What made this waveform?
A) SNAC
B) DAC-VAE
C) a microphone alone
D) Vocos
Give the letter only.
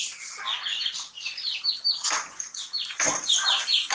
C